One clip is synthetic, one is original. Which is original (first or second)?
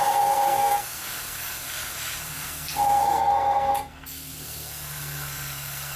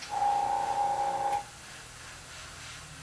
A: second